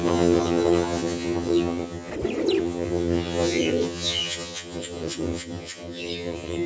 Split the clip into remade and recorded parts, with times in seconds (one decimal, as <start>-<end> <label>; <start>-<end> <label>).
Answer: 0.0-2.1 remade; 2.1-2.6 recorded; 2.6-6.7 remade